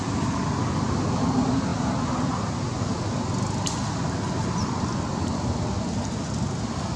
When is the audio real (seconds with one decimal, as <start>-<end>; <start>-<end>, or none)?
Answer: 0.0-7.0